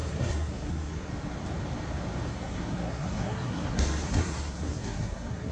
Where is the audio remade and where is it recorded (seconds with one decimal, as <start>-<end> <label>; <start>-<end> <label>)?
0.0-1.1 remade; 1.1-2.3 recorded; 2.3-5.5 remade